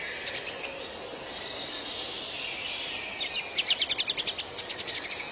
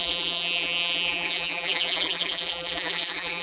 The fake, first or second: second